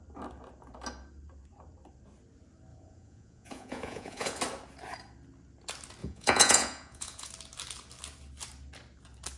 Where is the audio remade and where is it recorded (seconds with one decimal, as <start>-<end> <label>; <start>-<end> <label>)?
0.0-2.7 recorded; 2.7-4.4 remade; 4.4-6.0 recorded; 6.0-7.3 remade; 7.3-9.4 recorded